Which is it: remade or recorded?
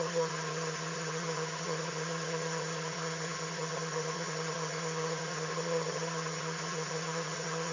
remade